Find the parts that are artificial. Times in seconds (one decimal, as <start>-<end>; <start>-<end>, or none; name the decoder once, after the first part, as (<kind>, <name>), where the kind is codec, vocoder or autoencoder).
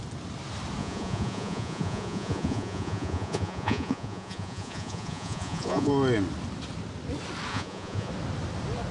0.8-5.9 (vocoder, Vocos); 7.5-8.1